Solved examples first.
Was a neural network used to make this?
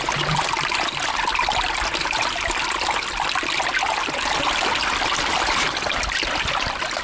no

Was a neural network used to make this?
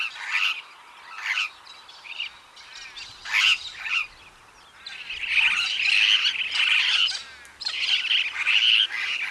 no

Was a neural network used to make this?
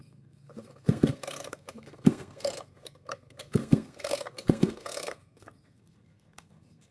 yes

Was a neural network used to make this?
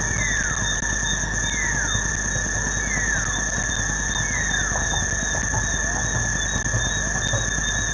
no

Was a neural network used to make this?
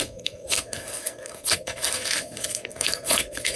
yes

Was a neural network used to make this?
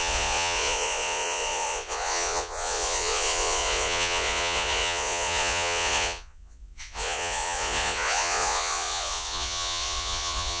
yes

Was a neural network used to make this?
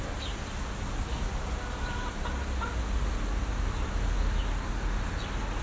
no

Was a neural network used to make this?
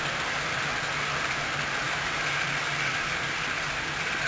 no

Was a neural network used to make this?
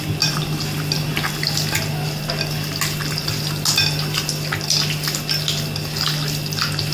no